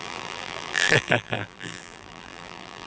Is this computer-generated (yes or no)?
yes